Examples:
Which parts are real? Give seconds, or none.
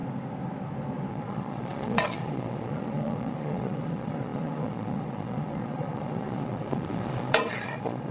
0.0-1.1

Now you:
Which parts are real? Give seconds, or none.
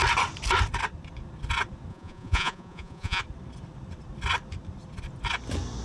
0.0-1.9; 3.2-5.8